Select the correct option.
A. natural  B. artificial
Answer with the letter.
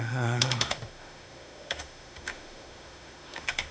B